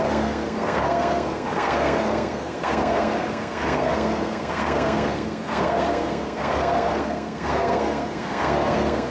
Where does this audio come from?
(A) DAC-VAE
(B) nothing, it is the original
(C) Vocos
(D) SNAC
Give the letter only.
D